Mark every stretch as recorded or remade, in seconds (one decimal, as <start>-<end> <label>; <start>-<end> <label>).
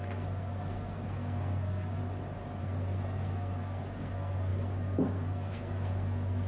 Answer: 0.0-2.0 remade; 2.0-2.6 recorded; 2.6-6.5 remade